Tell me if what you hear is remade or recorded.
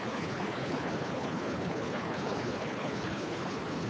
remade